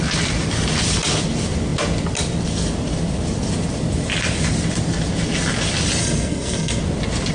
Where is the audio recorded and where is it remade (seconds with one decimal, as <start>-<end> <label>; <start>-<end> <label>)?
0.0-6.0 recorded; 6.0-6.8 remade; 6.8-7.3 recorded